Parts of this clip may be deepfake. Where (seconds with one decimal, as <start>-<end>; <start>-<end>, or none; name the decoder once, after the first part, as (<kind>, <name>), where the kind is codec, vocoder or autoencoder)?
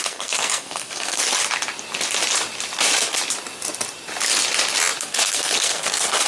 0.0-1.2 (codec, SNAC); 5.0-6.3